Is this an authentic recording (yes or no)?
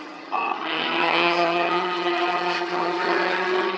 no